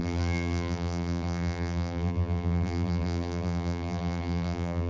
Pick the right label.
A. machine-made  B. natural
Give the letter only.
A